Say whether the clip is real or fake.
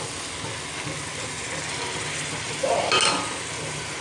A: real